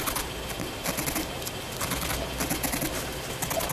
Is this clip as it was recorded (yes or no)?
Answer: yes